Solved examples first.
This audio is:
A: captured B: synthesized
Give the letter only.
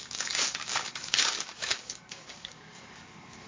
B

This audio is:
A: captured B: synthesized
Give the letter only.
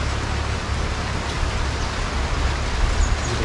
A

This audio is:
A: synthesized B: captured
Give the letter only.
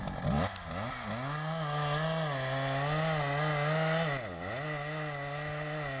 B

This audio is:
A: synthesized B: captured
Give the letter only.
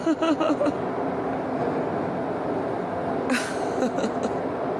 B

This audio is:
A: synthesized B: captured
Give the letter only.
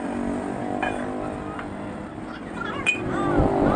B